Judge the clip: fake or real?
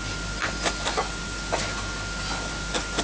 real